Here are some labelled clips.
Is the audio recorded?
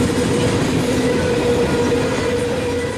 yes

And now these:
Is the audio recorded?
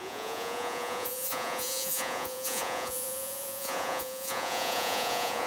no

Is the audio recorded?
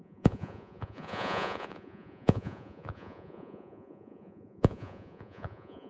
no